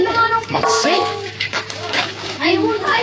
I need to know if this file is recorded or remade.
remade